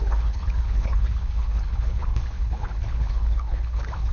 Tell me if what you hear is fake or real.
fake